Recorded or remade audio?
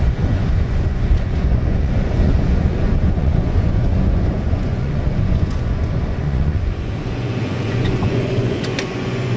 remade